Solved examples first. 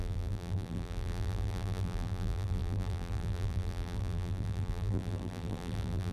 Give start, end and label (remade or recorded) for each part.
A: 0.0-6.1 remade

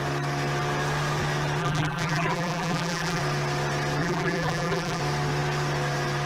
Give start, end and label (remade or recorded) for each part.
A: 0.0-1.6 recorded; 1.6-3.2 remade; 3.2-4.0 recorded; 4.0-5.0 remade; 5.0-6.3 recorded

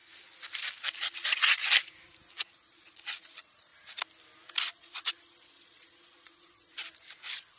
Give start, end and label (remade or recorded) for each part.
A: 0.0-1.0 recorded; 1.0-1.6 remade; 1.6-2.4 recorded; 2.4-3.7 remade; 3.7-4.6 recorded; 4.6-6.8 remade; 6.8-7.6 recorded

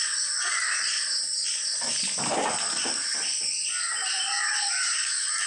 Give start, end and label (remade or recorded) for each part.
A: 0.0-5.5 recorded

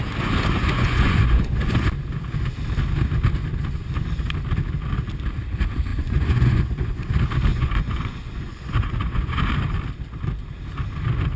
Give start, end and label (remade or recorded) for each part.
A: 0.0-0.6 recorded; 0.6-1.8 remade; 1.8-5.9 recorded; 5.9-7.1 remade; 7.1-7.5 recorded; 7.5-9.5 remade; 9.5-11.4 recorded

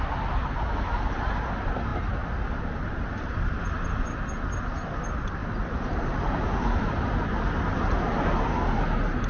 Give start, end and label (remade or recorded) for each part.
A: 0.0-9.3 recorded

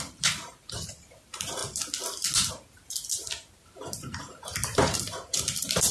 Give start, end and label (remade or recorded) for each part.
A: 0.0-1.6 remade; 1.6-2.5 recorded; 2.5-5.9 remade